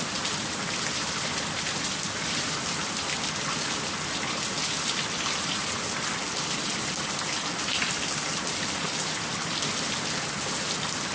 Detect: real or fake real